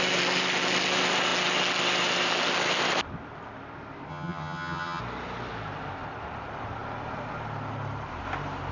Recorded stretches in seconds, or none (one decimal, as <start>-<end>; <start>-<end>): 0.0-4.1; 5.0-8.7